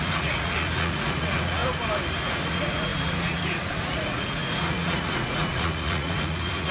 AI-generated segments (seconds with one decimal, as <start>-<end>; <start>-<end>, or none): 0.0-1.6; 2.2-6.7